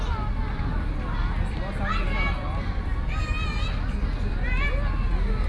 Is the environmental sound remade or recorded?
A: recorded